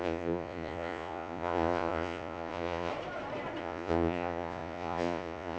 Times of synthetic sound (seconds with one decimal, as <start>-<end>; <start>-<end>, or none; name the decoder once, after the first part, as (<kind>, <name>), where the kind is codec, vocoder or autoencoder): 0.0-2.9 (vocoder, Vocos); 3.6-5.6